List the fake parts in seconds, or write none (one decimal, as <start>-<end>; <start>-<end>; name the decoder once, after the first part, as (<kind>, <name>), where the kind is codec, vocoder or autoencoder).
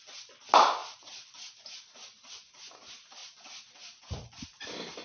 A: none